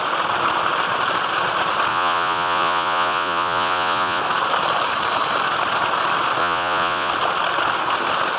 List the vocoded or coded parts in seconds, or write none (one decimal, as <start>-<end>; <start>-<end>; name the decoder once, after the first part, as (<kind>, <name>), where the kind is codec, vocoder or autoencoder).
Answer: 1.9-4.2 (vocoder, Vocos); 6.4-7.1